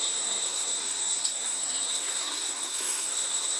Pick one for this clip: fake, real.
fake